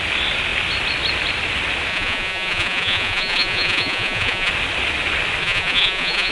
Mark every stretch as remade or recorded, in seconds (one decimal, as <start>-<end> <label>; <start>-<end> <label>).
0.0-1.9 recorded; 1.9-4.5 remade; 4.5-5.4 recorded; 5.4-6.3 remade